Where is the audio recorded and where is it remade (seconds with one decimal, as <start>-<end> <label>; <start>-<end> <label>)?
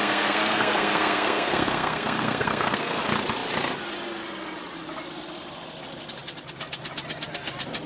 0.0-3.0 remade; 3.0-7.9 recorded